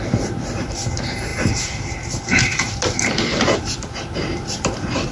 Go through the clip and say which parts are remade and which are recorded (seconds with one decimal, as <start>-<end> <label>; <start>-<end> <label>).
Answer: 0.0-5.1 remade